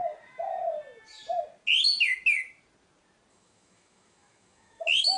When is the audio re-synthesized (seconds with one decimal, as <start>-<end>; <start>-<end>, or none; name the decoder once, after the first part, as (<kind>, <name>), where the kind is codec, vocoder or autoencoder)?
3.3-5.2 (autoencoder, DAC-VAE)